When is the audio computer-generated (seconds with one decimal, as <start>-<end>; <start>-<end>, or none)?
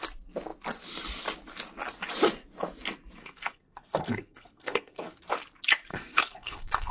3.2-5.2; 5.9-6.9